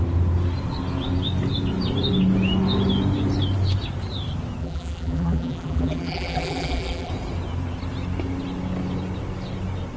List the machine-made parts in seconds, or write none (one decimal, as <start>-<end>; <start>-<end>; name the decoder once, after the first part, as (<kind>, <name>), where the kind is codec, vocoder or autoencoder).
4.6-7.1 (vocoder, BigVGAN v2)

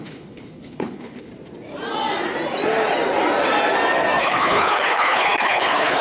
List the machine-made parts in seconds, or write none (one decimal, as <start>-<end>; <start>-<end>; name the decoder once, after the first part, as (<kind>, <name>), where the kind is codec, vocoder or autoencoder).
0.0-1.3 (codec, HILCodec); 4.2-6.0

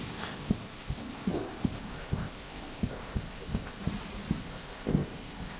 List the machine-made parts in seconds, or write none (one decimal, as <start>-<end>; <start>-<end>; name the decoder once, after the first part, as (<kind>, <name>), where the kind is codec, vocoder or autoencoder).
0.0-3.8 (codec, ZipCodec); 4.4-5.6

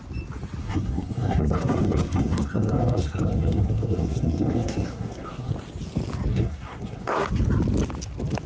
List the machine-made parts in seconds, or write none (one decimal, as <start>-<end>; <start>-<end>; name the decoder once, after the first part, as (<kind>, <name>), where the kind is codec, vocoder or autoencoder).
0.6-5.5 (codec, SNAC); 6.3-7.3